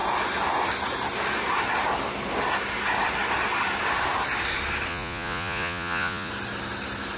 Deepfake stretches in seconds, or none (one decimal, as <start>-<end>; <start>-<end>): 4.9-6.3